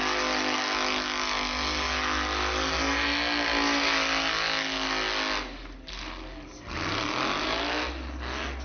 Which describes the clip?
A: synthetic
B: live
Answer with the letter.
B